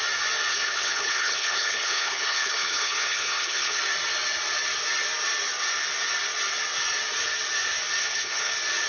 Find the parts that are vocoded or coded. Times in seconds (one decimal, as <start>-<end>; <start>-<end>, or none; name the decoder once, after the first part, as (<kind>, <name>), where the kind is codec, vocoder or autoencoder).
0.5-3.8 (codec, HILCodec); 8.0-8.5